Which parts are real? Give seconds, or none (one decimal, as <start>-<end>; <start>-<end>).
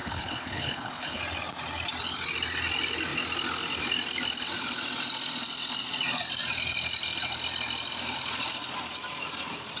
1.2-9.8